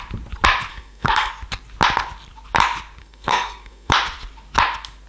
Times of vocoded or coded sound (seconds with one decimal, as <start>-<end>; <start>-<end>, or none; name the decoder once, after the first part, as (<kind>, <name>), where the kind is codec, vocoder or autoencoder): 0.7-1.3 (codec, SNAC); 3.0-3.9